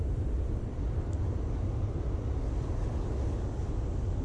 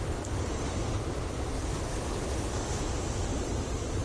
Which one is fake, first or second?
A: second